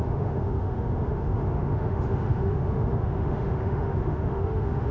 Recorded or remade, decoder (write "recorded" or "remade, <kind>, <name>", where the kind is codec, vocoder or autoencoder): remade, autoencoder, DAC-VAE